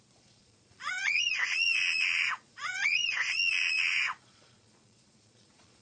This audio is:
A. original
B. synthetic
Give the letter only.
B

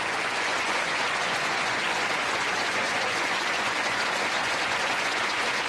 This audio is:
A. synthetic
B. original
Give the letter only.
A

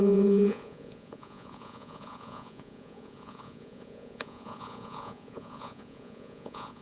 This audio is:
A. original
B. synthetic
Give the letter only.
B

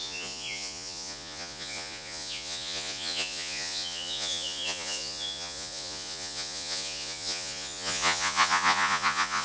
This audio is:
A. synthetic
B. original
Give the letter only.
A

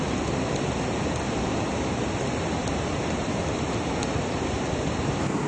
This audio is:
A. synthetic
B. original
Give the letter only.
B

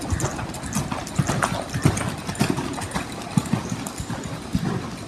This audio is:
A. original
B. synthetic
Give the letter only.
A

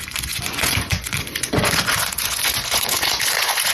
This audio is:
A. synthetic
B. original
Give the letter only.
A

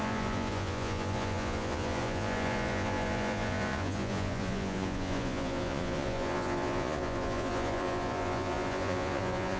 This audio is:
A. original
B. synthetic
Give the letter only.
B